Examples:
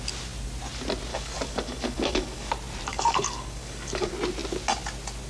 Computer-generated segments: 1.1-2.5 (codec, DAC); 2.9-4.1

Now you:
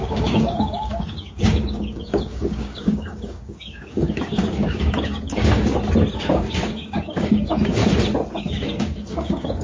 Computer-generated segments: 0.0-5.7 (codec, DAC); 6.2-7.8; 8.4-9.6

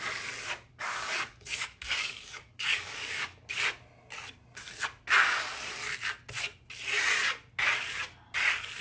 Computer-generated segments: 0.7-3.6 (codec, DAC)

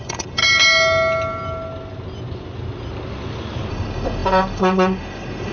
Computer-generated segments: 0.0-0.4 (codec, DAC); 3.7-5.5

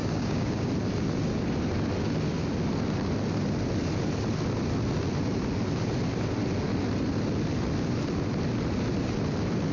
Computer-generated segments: 0.0-0.7 (codec, DAC)